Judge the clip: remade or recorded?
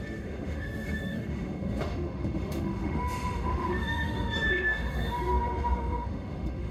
remade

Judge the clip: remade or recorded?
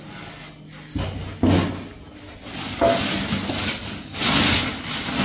recorded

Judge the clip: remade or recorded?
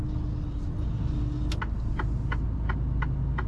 recorded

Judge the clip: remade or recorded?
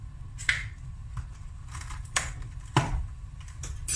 remade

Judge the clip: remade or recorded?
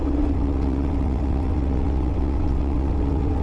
remade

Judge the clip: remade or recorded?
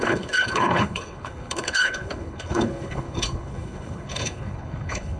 remade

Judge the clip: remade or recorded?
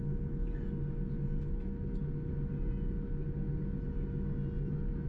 recorded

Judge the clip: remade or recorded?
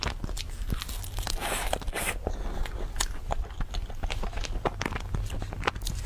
recorded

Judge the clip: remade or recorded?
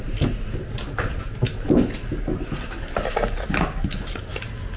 recorded